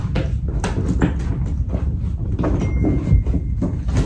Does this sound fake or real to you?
real